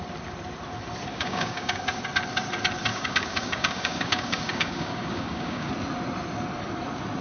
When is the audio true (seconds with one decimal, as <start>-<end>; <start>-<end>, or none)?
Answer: 0.0-1.1; 1.8-2.9; 5.7-7.2